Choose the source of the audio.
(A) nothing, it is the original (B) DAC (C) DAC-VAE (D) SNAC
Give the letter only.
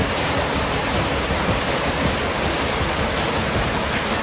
A